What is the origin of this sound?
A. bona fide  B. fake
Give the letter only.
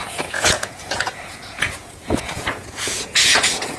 B